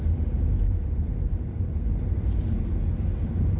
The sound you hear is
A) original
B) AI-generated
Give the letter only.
A